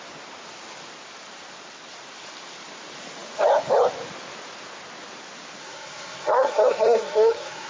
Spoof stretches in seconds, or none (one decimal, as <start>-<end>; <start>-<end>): 5.6-7.7